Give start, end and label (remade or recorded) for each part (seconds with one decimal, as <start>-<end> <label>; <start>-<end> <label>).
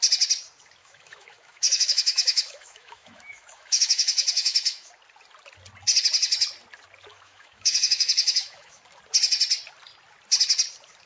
0.0-0.8 recorded; 0.8-4.9 remade; 4.9-7.1 recorded; 7.1-8.8 remade; 8.8-11.1 recorded